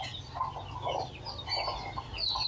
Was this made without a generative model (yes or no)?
yes